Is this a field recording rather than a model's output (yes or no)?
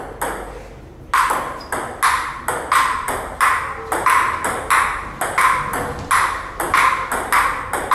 yes